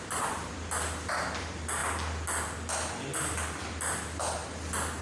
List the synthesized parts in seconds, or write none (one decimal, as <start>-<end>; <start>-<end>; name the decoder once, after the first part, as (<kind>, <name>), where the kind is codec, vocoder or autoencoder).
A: 0.0-1.8 (vocoder, BigVGAN v2); 3.6-5.0